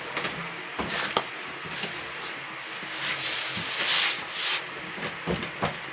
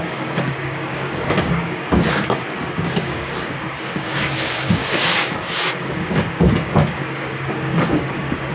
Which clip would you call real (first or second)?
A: first